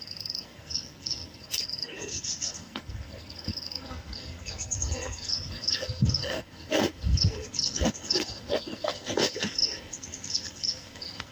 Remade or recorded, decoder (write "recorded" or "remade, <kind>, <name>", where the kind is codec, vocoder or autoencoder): remade, codec, SNAC